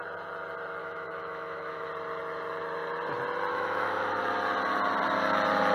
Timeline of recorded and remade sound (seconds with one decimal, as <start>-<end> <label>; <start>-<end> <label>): 0.0-0.8 recorded; 0.8-1.9 remade; 1.9-3.5 recorded; 3.5-4.2 remade; 4.2-5.7 recorded